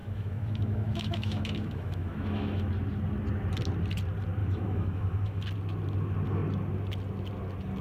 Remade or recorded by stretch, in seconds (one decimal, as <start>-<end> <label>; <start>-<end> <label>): 0.0-2.7 remade; 2.7-4.4 recorded; 4.4-5.4 remade; 5.4-7.8 recorded